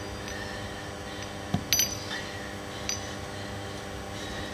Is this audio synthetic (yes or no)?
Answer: no